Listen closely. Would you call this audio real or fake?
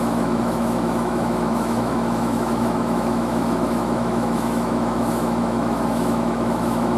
fake